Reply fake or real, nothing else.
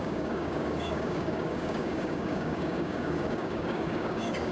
fake